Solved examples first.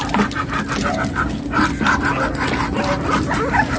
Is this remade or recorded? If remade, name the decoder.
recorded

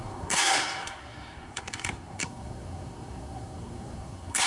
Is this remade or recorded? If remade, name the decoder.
remade, codec, SNAC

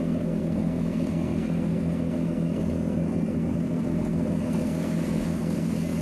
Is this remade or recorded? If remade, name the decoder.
remade, codec, SNAC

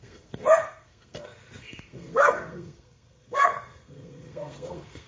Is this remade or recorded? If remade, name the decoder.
remade, codec, SNAC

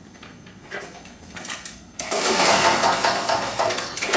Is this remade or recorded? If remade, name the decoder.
remade, codec, SNAC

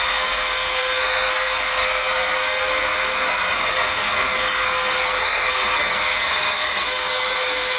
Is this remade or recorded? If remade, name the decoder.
remade, codec, SNAC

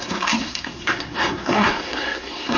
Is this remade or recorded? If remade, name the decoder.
remade, codec, SNAC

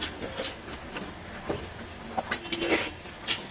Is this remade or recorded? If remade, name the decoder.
recorded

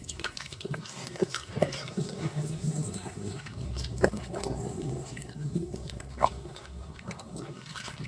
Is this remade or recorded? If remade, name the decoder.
remade, codec, SNAC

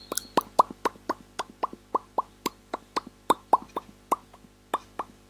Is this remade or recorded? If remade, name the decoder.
recorded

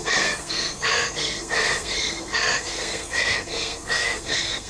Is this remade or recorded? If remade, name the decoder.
remade, codec, SNAC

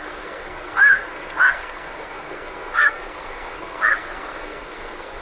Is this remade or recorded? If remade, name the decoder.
remade, codec, SNAC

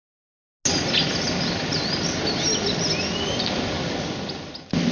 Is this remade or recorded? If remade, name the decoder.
recorded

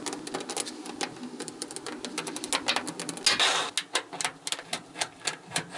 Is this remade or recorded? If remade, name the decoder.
recorded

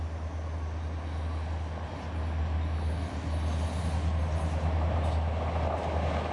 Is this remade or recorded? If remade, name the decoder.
recorded